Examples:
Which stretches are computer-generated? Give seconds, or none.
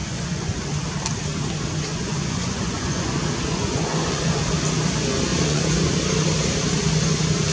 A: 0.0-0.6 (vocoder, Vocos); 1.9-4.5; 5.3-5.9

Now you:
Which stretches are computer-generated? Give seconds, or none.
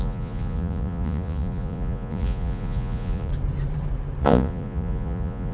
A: 0.0-3.3 (vocoder, Vocos); 4.2-5.5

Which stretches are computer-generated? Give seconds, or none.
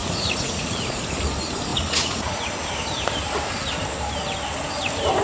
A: 0.0-1.0 (vocoder, Vocos); 1.7-2.5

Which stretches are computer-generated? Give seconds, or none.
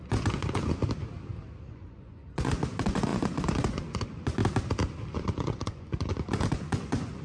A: 0.0-0.8 (vocoder, Vocos); 1.7-4.4; 5.1-7.2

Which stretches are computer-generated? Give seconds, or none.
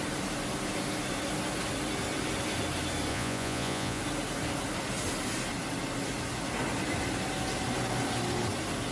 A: 3.1-4.0 (vocoder, Vocos)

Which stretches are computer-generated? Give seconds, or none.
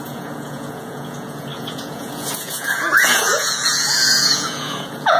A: 0.0-5.2 (vocoder, Vocos)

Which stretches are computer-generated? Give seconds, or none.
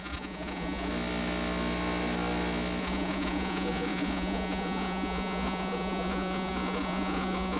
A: 0.0-0.9 (vocoder, Vocos); 2.8-7.6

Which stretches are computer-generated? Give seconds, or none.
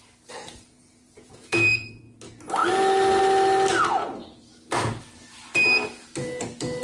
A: 0.7-2.0 (vocoder, Vocos)